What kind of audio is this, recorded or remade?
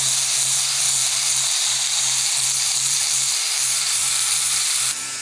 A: remade